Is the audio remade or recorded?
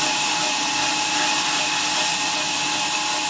recorded